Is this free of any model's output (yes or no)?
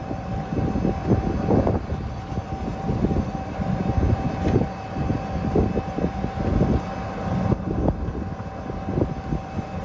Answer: yes